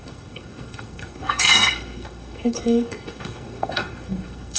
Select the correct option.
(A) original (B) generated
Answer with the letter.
B